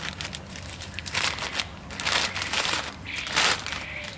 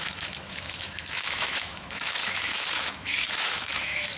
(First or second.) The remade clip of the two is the second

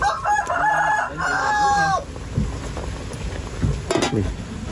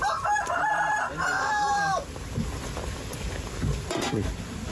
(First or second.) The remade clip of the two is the second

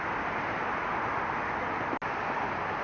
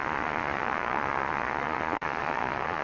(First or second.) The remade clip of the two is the second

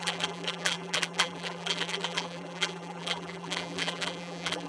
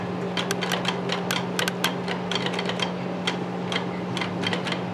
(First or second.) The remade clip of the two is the first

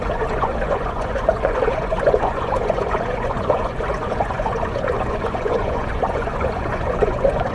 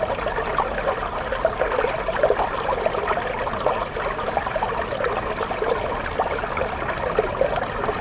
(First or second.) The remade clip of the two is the first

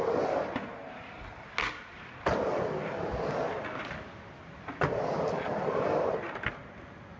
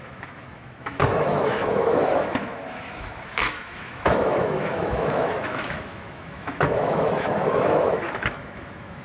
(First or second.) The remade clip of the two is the second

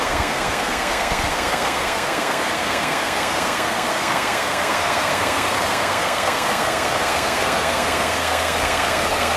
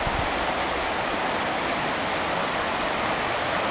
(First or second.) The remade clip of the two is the first